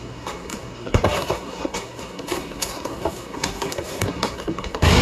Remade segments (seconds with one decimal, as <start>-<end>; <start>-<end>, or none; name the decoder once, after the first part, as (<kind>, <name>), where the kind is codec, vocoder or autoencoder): 0.0-5.0 (codec, SNAC)